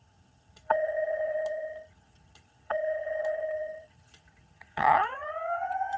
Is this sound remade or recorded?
remade